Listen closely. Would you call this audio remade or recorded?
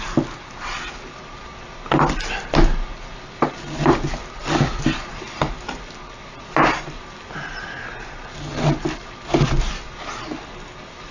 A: recorded